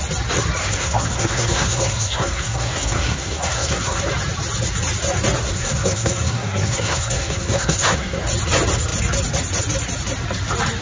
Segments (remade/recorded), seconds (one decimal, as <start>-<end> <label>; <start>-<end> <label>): 0.0-0.6 recorded; 0.6-4.0 remade; 4.0-5.4 recorded; 5.4-8.2 remade; 8.2-10.8 recorded

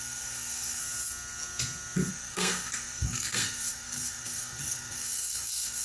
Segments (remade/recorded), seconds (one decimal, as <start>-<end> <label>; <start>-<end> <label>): 0.0-0.8 remade; 0.8-2.1 recorded; 2.1-5.8 remade

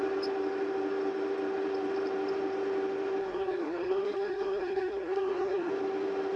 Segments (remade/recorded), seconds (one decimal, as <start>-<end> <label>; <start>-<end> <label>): 0.0-3.2 recorded; 3.2-5.7 remade; 5.7-6.4 recorded

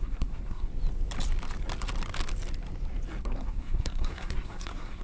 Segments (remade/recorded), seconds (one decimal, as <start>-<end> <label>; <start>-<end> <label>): 0.0-0.7 remade; 0.7-3.2 recorded; 3.2-5.0 remade

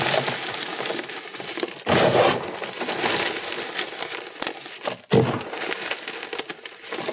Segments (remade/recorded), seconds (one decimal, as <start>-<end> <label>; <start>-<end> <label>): 0.0-7.1 recorded